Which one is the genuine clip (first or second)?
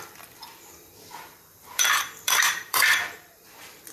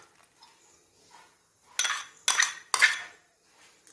second